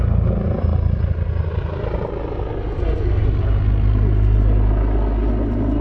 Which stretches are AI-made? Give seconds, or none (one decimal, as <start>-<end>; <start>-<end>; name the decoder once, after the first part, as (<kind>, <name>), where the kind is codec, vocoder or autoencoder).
none